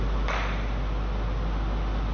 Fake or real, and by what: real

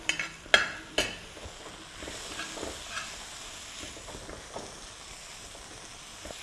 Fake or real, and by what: real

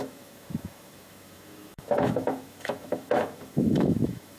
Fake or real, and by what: fake, autoencoder, DAC-VAE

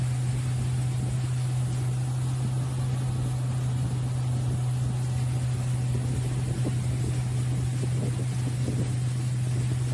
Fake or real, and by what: real